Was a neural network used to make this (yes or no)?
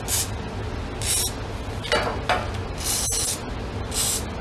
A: no